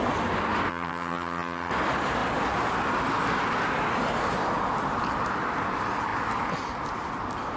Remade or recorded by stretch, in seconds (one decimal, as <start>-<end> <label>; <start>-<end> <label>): 0.0-0.7 recorded; 0.7-1.7 remade; 1.7-7.6 recorded